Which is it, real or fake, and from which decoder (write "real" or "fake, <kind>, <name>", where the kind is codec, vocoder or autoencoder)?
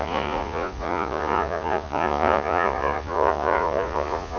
fake, vocoder, Vocos